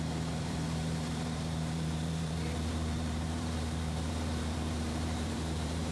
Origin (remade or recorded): remade